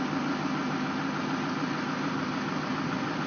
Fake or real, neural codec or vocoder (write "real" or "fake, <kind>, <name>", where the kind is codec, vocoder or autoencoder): real